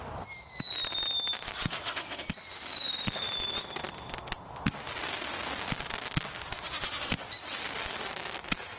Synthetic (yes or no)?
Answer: no